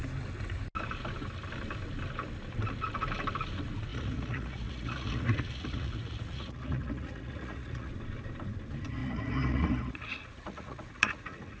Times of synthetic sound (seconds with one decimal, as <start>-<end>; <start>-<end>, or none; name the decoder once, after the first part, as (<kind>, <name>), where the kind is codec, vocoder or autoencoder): 3.9-7.9 (vocoder, Vocos); 9.0-11.6